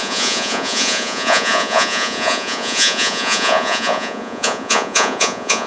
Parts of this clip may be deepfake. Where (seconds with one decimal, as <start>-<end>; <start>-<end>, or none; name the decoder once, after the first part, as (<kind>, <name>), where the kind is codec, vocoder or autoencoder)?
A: 0.0-5.7 (vocoder, Vocos)